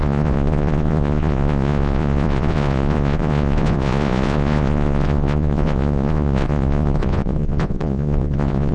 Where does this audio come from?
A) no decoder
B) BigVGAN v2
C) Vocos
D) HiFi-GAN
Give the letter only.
C